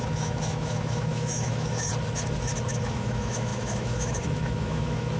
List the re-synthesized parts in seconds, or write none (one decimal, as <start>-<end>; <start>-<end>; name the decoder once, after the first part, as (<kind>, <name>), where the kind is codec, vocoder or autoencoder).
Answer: 0.0-1.9 (autoencoder, DAC-VAE); 2.7-5.2